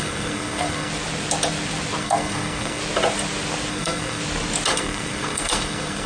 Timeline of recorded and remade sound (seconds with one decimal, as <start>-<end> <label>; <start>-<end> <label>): 0.0-0.9 remade; 0.9-2.0 recorded; 2.0-2.8 remade; 2.8-3.7 recorded; 3.7-4.2 remade; 4.2-4.7 recorded; 4.7-6.1 remade